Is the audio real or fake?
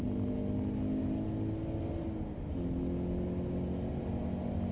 real